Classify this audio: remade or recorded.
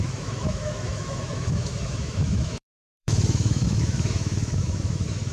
remade